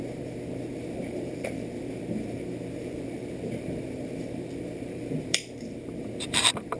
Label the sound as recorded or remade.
remade